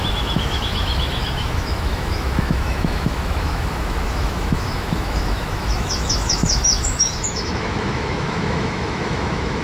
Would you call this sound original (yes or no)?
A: no